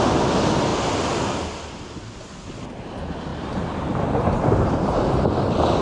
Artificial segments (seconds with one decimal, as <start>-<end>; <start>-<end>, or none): 3.3-5.3